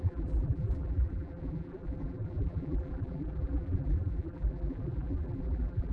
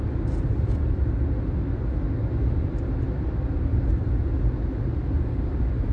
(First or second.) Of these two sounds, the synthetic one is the first